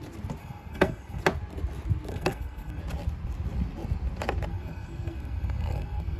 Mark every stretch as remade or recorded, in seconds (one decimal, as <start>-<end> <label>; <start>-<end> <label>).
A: 0.0-0.4 recorded; 0.4-1.2 remade; 1.2-2.1 recorded; 2.1-2.8 remade; 2.8-4.5 recorded; 4.5-6.2 remade